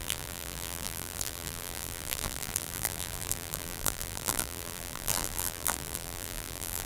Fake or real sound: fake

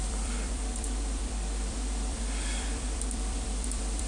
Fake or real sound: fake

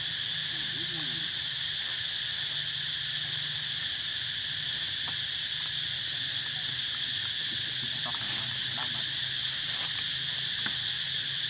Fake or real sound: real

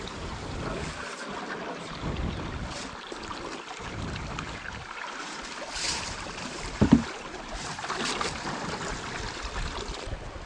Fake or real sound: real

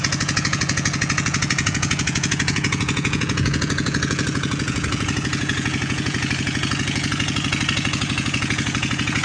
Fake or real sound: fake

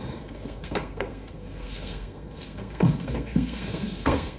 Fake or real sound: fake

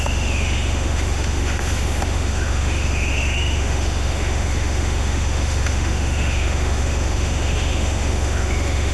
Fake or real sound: fake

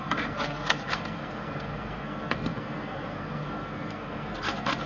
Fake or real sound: fake